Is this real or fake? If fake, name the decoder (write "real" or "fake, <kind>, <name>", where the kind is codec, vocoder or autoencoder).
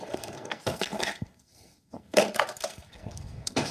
fake, codec, SNAC